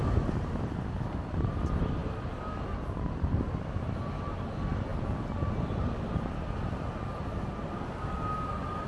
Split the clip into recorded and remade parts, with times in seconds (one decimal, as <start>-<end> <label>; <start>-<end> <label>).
0.0-8.9 recorded